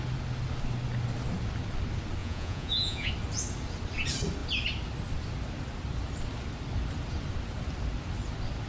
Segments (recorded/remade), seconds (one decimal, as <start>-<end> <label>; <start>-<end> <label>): 0.0-2.2 recorded; 2.2-3.1 remade; 3.1-8.7 recorded